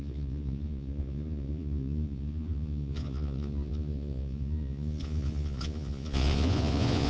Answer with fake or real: fake